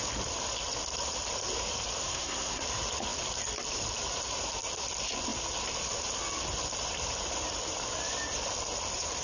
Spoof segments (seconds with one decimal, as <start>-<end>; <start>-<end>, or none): 2.0-2.6